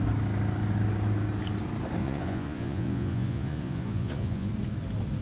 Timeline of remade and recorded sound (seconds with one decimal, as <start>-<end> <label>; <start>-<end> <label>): 0.0-2.0 recorded; 2.0-4.5 remade; 4.5-5.2 recorded